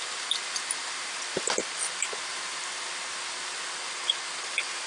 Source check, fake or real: real